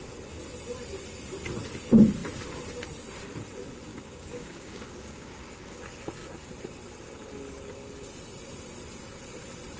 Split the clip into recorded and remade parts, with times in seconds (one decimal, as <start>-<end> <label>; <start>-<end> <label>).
0.0-3.9 recorded; 3.9-5.8 remade; 5.8-9.8 recorded